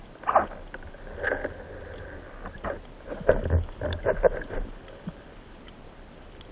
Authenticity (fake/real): real